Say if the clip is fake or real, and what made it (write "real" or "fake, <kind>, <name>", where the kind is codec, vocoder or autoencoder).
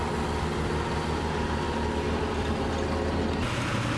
real